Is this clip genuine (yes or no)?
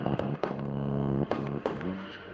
no